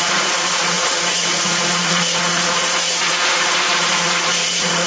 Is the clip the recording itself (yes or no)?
no